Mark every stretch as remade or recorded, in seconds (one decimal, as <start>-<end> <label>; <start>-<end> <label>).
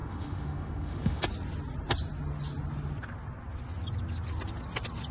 0.0-1.2 remade; 1.2-5.1 recorded